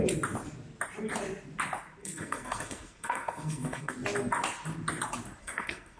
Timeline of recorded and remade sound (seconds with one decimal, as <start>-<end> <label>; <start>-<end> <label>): 0.0-2.0 recorded; 2.0-3.9 remade; 3.9-5.4 recorded; 5.4-6.0 remade